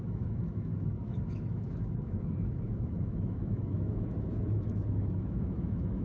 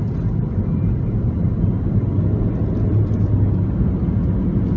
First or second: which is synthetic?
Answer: first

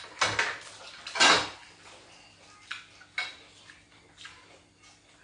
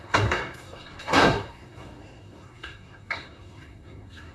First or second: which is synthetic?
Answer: second